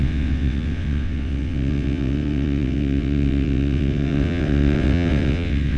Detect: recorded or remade remade